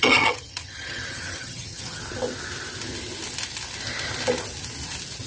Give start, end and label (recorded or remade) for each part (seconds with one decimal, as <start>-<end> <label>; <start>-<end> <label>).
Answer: 0.0-2.0 remade; 2.0-5.3 recorded